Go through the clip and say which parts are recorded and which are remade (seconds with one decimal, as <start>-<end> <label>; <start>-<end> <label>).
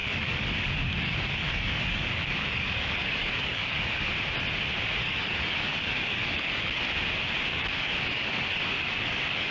0.0-4.1 remade; 4.1-5.0 recorded; 5.0-6.8 remade; 6.8-7.5 recorded; 7.5-9.5 remade